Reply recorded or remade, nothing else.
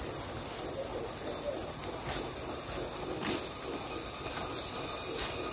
recorded